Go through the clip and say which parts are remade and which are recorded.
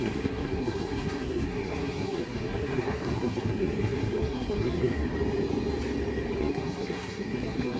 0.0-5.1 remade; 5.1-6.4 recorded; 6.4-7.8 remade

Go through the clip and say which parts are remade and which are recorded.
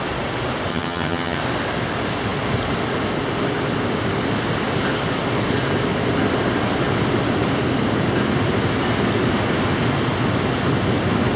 0.0-0.7 recorded; 0.7-1.4 remade; 1.4-11.4 recorded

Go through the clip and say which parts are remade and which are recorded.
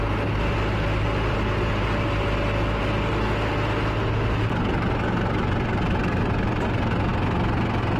0.0-8.0 recorded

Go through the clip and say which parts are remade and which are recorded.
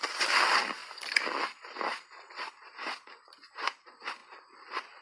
0.0-5.0 recorded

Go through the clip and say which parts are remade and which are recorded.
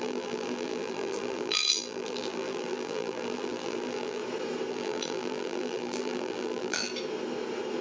0.0-4.2 remade; 4.2-4.7 recorded; 4.7-6.9 remade; 6.9-7.8 recorded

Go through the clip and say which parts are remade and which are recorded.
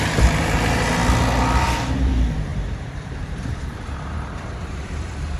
0.0-1.0 remade; 1.0-1.6 recorded; 1.6-5.4 remade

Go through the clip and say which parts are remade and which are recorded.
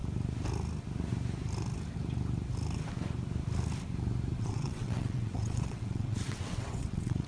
0.0-4.4 recorded; 4.4-7.3 remade